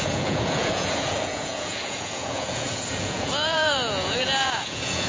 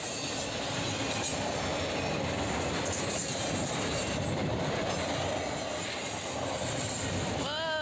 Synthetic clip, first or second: first